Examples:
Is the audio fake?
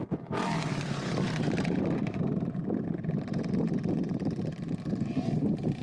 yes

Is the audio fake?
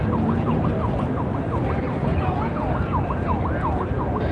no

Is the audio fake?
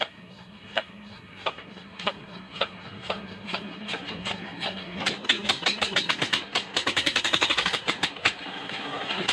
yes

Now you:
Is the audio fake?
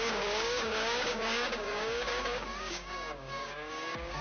yes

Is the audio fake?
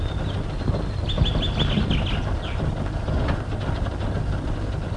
no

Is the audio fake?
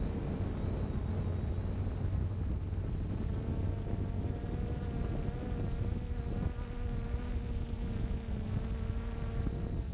no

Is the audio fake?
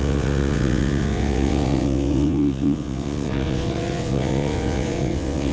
yes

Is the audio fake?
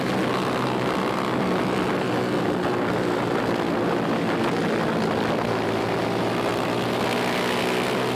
no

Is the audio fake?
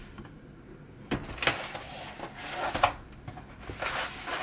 no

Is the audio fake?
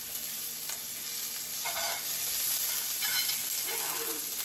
no